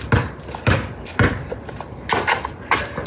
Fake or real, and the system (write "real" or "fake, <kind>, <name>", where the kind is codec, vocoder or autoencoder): real